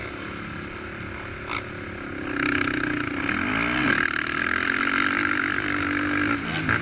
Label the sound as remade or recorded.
recorded